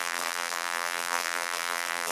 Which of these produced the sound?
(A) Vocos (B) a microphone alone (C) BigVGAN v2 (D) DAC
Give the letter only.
C